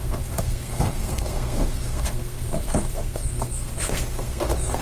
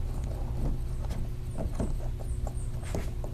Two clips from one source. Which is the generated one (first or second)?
first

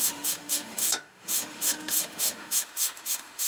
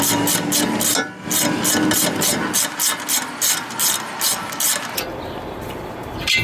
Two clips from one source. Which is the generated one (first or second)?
first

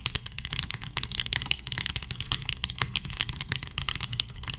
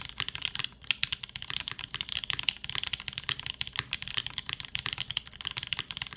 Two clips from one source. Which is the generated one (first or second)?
first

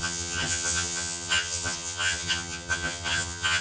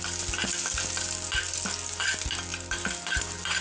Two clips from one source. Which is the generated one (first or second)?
first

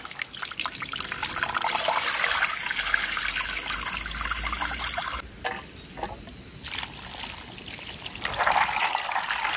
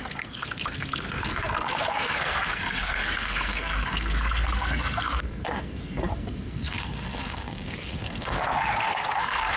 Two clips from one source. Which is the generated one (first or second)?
second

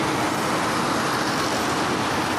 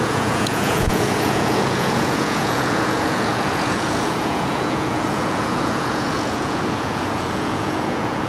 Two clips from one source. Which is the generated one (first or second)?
second